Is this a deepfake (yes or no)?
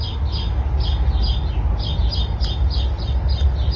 no